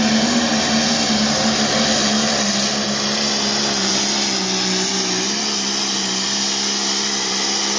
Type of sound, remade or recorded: recorded